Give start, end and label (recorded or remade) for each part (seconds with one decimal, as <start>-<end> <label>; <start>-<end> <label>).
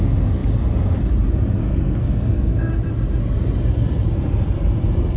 0.0-1.6 recorded; 1.6-2.7 remade; 2.7-5.2 recorded